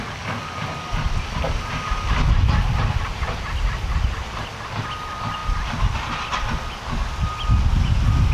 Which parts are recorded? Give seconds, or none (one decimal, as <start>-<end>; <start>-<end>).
0.0-8.3